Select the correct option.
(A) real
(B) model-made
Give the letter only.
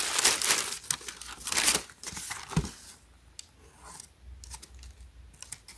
A